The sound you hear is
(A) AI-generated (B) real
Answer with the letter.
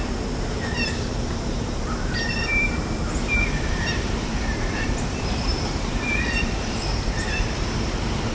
A